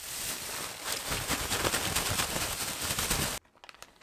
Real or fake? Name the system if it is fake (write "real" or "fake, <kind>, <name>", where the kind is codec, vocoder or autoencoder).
real